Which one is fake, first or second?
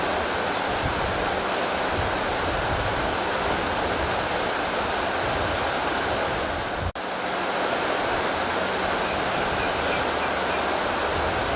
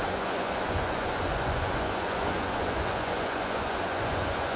second